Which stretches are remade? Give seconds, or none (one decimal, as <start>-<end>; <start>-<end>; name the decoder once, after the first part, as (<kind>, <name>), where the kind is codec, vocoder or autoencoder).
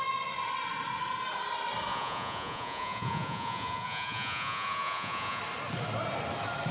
1.9-5.4 (vocoder, Vocos)